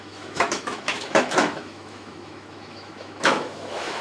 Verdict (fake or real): fake